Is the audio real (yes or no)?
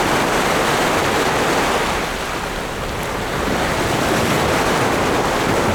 yes